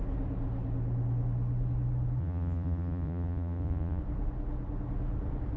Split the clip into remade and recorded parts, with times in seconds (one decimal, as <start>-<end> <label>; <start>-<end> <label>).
0.0-2.2 recorded; 2.2-4.0 remade; 4.0-5.6 recorded